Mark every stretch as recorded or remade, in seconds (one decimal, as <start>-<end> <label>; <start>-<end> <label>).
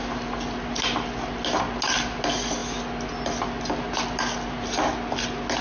0.0-5.6 recorded